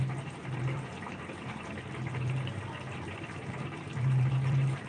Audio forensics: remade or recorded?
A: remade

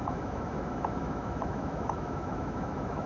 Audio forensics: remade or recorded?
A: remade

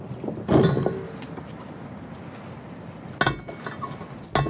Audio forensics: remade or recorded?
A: recorded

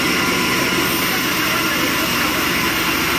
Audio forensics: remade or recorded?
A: recorded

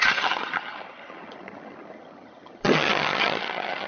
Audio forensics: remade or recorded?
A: remade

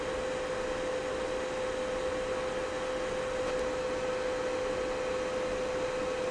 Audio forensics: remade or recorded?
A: recorded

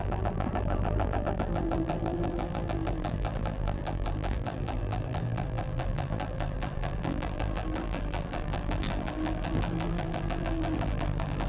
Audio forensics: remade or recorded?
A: remade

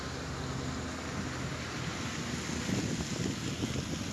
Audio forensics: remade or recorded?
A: recorded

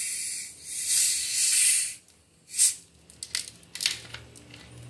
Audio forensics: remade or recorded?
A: recorded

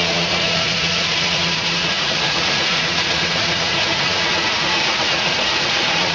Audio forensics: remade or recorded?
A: remade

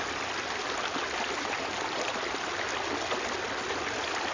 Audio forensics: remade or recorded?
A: recorded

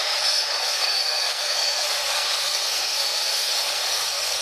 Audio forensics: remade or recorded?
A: remade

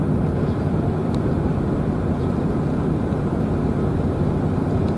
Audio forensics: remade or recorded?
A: remade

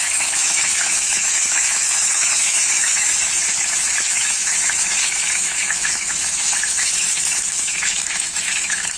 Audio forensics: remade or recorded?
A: remade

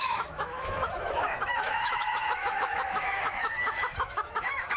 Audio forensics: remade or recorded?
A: remade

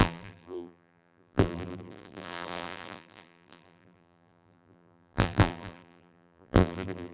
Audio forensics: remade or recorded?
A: remade